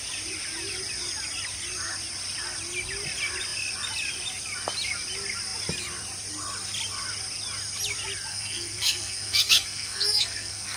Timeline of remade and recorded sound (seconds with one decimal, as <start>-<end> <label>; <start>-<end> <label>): 0.0-8.3 recorded; 8.3-10.8 remade

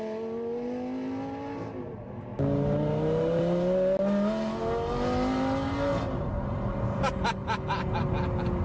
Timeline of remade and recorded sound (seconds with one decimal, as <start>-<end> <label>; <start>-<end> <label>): 0.0-8.6 recorded

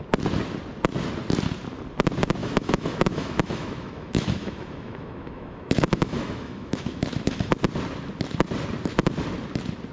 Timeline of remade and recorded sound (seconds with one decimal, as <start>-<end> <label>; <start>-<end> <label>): 0.0-2.4 recorded; 2.4-7.5 remade; 7.5-9.9 recorded

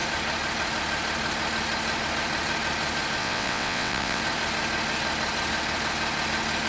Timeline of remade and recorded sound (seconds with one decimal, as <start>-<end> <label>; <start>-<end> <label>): 0.0-3.2 recorded; 3.2-4.2 remade; 4.2-6.7 recorded